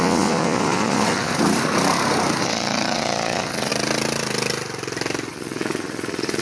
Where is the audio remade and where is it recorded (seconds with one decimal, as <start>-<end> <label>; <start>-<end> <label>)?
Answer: 0.0-1.3 remade; 1.3-2.4 recorded; 2.4-3.7 remade; 3.7-5.3 recorded; 5.3-6.4 remade